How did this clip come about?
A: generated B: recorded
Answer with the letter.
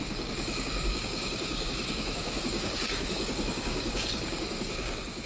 A